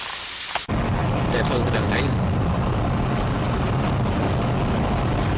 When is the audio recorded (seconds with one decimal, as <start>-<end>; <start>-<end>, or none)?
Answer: 0.0-5.4